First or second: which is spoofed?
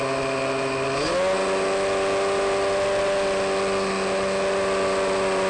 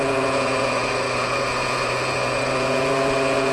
second